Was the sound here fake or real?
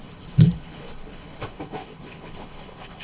fake